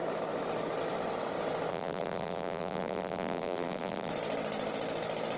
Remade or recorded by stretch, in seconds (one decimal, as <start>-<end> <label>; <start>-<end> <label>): 0.0-1.7 recorded; 1.7-4.1 remade; 4.1-5.4 recorded